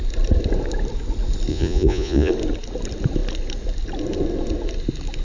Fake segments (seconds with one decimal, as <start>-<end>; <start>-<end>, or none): 1.5-2.3